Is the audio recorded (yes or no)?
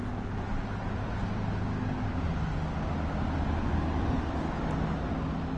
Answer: yes